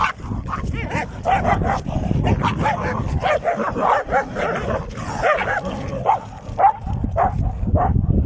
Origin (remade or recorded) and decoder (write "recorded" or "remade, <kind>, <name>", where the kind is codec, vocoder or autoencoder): recorded